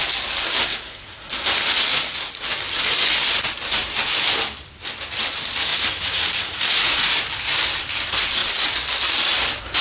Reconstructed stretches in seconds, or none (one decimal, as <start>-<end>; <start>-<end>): 0.7-1.3; 1.9-2.4; 5.7-7.2